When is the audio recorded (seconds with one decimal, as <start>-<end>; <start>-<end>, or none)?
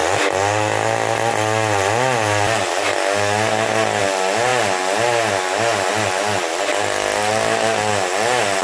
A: 0.0-8.6